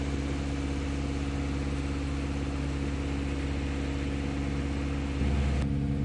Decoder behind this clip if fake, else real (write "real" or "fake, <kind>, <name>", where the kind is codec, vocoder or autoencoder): real